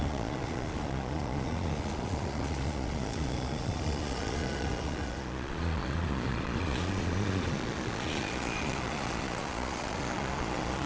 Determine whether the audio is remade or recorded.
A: remade